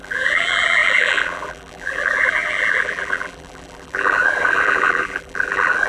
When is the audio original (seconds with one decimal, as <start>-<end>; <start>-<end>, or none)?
none